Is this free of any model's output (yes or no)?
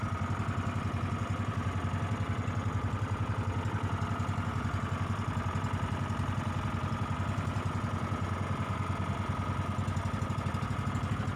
yes